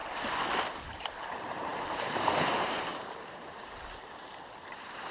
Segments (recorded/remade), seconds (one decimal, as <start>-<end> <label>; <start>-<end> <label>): 0.0-0.9 recorded; 0.9-5.1 remade